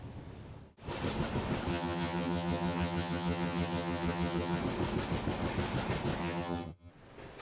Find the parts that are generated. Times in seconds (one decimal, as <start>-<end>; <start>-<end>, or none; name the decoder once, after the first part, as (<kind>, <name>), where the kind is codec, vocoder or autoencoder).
1.7-4.6 (vocoder, HiFi-GAN); 6.2-6.9